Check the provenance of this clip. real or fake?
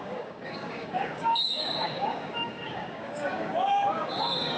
fake